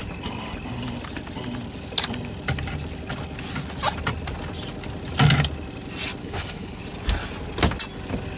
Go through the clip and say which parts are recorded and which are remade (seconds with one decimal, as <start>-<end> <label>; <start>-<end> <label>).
0.0-6.2 recorded; 6.2-6.8 remade; 6.8-8.4 recorded

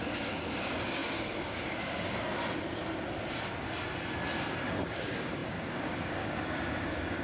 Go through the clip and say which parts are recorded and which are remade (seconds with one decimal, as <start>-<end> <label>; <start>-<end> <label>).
0.0-2.4 remade; 2.4-4.7 recorded; 4.7-7.2 remade

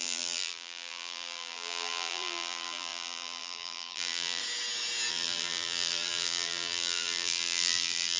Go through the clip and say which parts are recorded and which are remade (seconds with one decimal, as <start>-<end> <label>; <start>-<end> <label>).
0.0-4.4 remade; 4.4-5.1 recorded; 5.1-8.2 remade

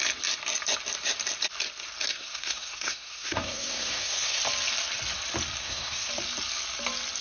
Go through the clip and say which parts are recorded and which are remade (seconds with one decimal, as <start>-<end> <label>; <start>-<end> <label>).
0.0-2.1 recorded; 2.1-4.4 remade; 4.4-5.6 recorded; 5.6-6.1 remade; 6.1-7.2 recorded

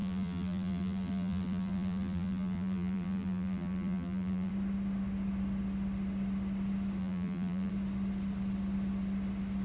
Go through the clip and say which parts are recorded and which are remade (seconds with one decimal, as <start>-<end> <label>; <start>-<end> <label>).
0.0-4.5 remade; 4.5-7.0 recorded; 7.0-7.7 remade; 7.7-9.6 recorded

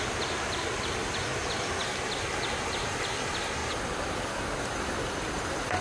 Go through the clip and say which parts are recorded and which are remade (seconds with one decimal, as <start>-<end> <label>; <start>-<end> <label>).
0.0-5.8 recorded

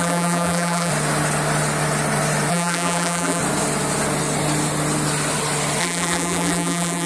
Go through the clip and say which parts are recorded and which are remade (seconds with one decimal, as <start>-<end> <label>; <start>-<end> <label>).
0.0-0.9 remade; 0.9-2.5 recorded; 2.5-3.4 remade; 3.4-5.8 recorded; 5.8-7.1 remade